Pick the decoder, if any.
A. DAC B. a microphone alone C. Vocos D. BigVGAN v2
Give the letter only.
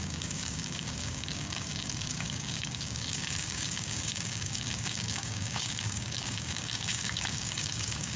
A